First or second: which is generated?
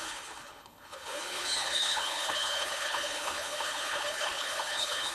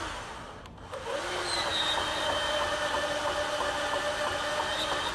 first